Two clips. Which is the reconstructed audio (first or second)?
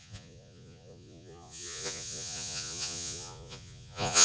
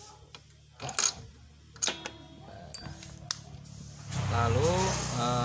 first